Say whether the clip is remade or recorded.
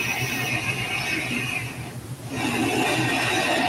recorded